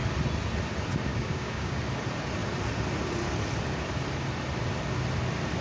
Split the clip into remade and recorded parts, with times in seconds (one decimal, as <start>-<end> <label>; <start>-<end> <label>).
0.0-1.1 recorded; 1.1-1.8 remade; 1.8-5.6 recorded